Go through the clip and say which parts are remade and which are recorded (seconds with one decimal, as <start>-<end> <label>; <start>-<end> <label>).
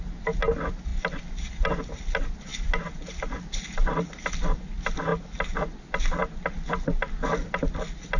0.0-8.2 recorded